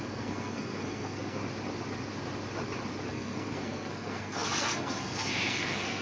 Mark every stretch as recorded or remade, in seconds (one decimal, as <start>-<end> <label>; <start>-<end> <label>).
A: 0.0-1.4 remade; 1.4-3.1 recorded; 3.1-6.0 remade